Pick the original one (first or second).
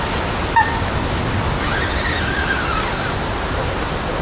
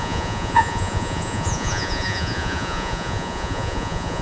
first